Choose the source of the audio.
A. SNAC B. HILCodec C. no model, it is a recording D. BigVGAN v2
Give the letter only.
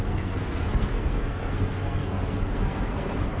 A